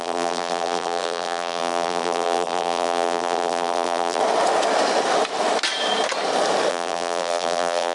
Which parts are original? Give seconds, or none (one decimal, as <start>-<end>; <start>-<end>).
4.2-6.7